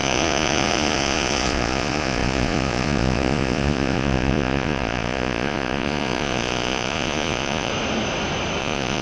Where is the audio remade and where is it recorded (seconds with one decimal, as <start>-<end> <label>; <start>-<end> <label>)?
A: 0.0-7.7 remade; 7.7-8.6 recorded; 8.6-9.0 remade